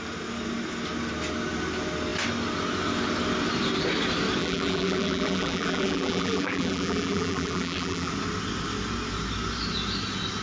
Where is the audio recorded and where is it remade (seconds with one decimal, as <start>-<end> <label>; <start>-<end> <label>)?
0.0-4.4 recorded; 4.4-8.1 remade; 8.1-10.4 recorded